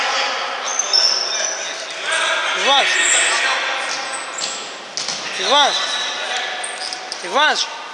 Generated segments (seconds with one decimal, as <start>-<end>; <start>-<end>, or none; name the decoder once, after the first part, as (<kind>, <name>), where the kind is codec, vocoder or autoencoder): none